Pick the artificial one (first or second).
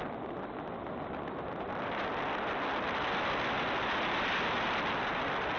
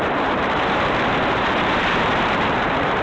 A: second